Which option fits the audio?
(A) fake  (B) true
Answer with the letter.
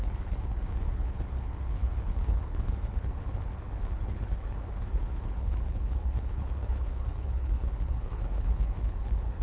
A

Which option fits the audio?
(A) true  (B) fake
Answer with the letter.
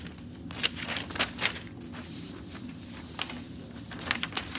A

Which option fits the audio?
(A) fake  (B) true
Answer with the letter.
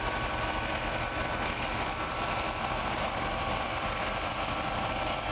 B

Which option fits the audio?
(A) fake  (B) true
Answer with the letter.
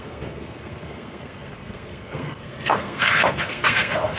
A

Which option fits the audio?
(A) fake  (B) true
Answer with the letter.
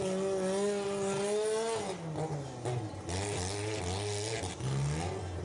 B